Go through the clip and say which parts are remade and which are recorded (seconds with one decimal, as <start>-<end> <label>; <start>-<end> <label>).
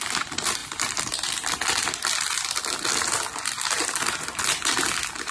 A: 0.0-5.3 recorded